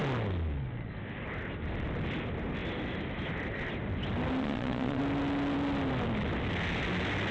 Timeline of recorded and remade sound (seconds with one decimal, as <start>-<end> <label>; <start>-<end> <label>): 0.0-4.4 recorded; 4.4-5.0 remade; 5.0-7.3 recorded